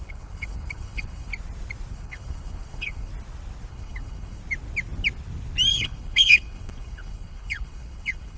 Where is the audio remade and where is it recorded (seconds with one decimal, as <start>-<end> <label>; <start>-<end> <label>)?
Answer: 0.0-1.3 remade; 1.3-1.9 recorded; 1.9-3.1 remade; 3.1-3.7 recorded; 3.7-4.4 remade; 4.4-5.7 recorded; 5.7-8.4 remade